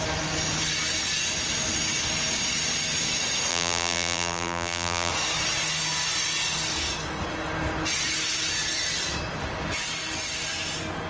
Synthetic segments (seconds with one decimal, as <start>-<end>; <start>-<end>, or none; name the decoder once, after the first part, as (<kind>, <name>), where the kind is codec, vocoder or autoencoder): 3.5-5.1 (vocoder, BigVGAN v2)